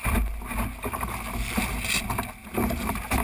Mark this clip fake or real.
real